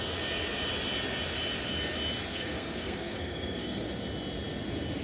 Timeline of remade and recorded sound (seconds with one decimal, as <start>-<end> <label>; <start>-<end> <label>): 0.0-2.3 recorded; 2.3-3.9 remade; 3.9-5.0 recorded